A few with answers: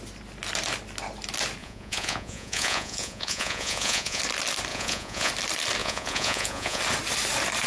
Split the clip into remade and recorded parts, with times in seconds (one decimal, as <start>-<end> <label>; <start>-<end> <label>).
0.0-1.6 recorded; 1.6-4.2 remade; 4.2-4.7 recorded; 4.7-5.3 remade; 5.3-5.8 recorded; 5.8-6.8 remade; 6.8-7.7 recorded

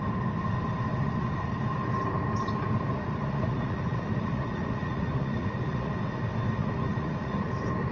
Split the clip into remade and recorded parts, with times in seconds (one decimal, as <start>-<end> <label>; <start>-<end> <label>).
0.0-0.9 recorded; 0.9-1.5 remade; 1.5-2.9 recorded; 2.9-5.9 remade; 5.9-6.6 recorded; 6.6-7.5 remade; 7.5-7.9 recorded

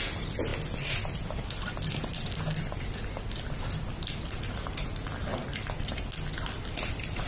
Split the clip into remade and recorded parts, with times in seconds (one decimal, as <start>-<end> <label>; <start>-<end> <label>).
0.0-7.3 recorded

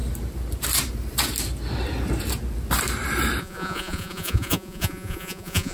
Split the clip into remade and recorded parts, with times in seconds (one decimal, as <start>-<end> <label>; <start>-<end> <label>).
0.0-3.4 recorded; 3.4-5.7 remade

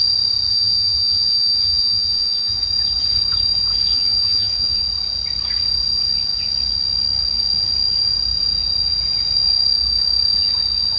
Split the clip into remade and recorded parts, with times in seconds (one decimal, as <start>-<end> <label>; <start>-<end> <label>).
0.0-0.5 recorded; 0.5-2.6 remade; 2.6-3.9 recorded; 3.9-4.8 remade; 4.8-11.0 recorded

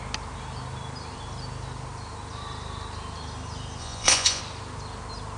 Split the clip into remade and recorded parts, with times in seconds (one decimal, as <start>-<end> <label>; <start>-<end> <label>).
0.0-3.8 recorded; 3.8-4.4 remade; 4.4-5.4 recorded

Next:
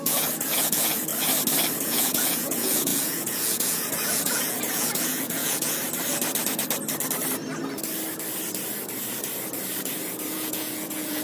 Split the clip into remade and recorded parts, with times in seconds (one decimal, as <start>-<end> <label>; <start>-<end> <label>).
0.0-1.1 remade; 1.1-1.8 recorded; 1.8-5.8 remade; 5.8-10.3 recorded; 10.3-11.2 remade

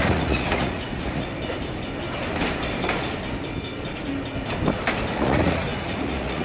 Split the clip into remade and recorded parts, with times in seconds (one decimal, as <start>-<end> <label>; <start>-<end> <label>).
0.0-1.3 remade; 1.3-5.1 recorded; 5.1-6.4 remade